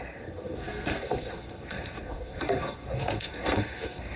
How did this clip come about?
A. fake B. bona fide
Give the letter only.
A